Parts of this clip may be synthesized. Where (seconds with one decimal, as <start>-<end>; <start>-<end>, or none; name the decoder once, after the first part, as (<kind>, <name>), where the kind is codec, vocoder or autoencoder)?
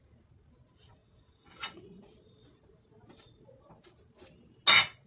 1.0-2.0 (vocoder, WaveNeXt)